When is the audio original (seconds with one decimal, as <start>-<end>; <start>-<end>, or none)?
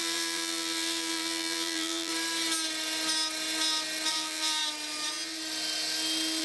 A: 2.1-4.1; 4.6-6.4